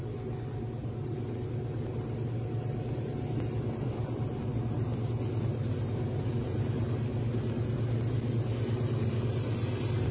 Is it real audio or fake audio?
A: real